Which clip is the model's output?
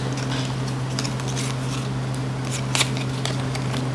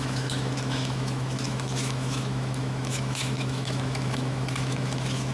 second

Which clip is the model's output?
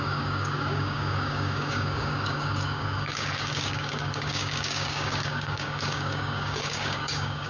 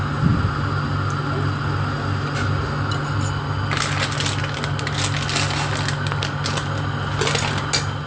first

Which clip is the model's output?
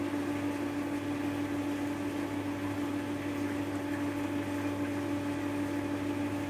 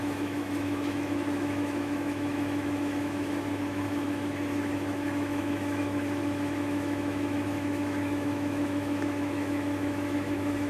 second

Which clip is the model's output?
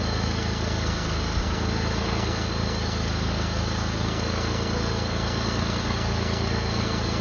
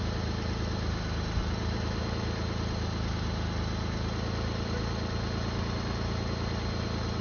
first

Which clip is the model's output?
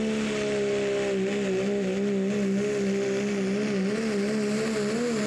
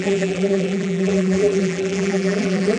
second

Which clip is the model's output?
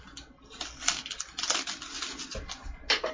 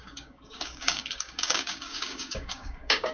second